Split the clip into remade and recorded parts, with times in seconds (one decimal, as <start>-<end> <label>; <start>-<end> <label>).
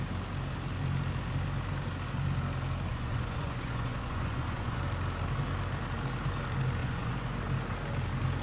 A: 0.0-2.9 recorded; 2.9-4.8 remade; 4.8-6.8 recorded; 6.8-7.4 remade; 7.4-8.4 recorded